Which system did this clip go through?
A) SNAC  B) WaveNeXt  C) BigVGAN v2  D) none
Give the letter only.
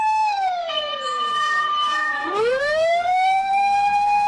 A